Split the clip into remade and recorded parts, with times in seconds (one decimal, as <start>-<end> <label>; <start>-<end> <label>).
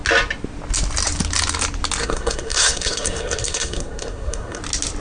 0.0-2.0 recorded; 2.0-4.6 remade; 4.6-5.0 recorded